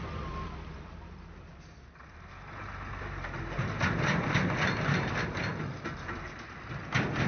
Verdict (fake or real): fake